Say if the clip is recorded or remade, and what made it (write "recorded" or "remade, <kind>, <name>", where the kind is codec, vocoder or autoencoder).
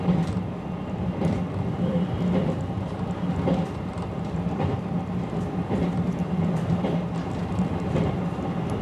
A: remade, vocoder, BigVGAN v2